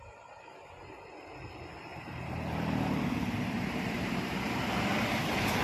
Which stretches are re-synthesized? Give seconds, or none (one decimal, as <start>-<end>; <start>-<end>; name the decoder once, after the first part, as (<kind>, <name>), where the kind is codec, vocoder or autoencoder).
1.9-4.6 (vocoder, BigVGAN v2)